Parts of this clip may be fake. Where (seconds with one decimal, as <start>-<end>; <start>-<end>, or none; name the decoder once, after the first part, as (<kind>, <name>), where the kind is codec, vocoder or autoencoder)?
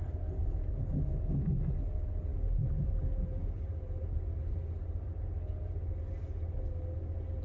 1.1-1.8 (autoencoder, DAC-VAE)